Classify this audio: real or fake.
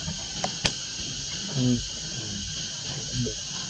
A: real